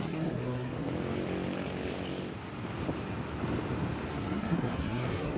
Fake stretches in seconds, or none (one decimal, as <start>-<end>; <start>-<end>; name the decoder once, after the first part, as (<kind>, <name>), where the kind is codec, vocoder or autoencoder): 0.0-0.9 (codec, SNAC); 4.1-5.4